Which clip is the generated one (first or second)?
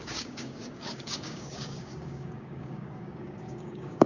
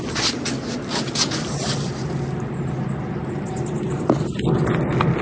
first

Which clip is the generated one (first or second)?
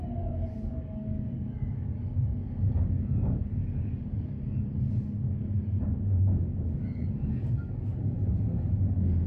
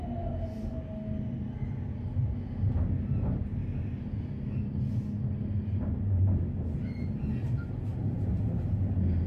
first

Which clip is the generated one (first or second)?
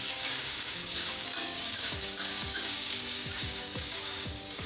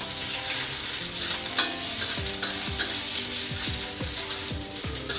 first